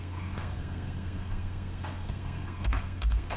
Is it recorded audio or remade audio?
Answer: remade